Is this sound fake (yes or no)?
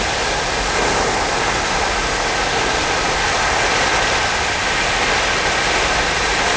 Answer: no